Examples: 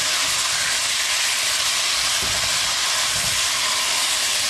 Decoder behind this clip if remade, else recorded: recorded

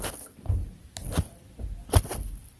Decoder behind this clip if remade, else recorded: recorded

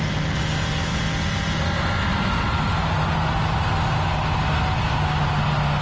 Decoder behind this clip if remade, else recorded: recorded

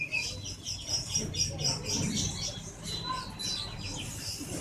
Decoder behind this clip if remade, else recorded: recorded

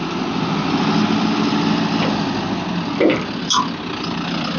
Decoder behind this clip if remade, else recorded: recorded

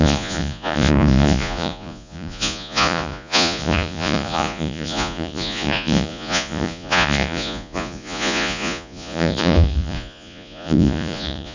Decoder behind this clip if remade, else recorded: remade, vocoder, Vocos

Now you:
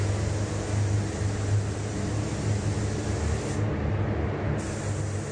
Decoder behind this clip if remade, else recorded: recorded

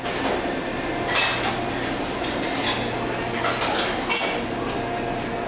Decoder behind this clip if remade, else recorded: recorded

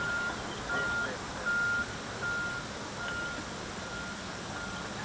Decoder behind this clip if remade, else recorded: recorded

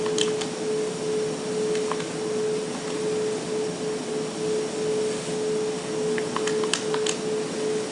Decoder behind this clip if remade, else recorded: recorded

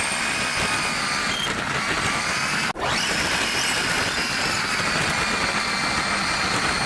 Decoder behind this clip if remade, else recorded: recorded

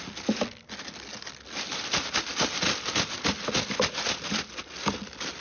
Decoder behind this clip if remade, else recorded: recorded